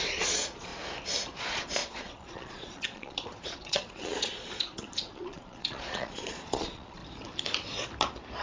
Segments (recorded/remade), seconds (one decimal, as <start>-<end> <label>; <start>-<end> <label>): 0.0-0.7 remade; 0.7-1.4 recorded; 1.4-7.0 remade; 7.0-8.4 recorded